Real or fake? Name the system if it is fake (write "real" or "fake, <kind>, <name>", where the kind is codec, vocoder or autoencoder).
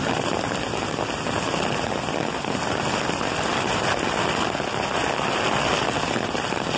real